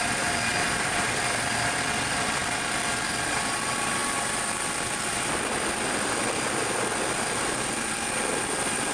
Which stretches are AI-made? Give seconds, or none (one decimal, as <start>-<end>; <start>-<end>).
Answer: 0.0-8.9